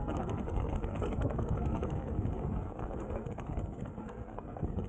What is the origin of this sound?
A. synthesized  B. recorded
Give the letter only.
A